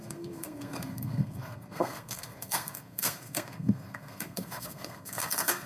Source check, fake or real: fake